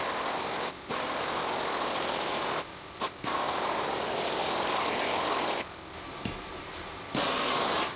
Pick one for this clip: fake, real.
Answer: real